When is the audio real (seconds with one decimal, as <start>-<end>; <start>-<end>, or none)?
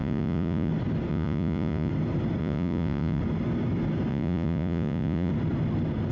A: 0.7-1.1; 1.9-2.4; 3.2-4.1; 5.3-6.1